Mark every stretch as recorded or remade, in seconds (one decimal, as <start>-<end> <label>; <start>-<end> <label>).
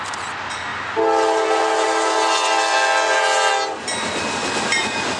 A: 0.0-0.7 remade; 0.7-3.8 recorded; 3.8-5.2 remade